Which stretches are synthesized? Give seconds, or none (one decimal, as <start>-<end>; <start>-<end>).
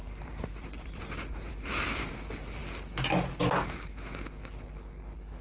0.0-1.0; 1.5-2.1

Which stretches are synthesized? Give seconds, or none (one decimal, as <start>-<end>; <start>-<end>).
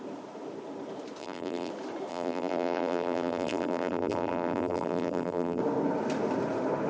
1.2-1.7; 2.1-5.6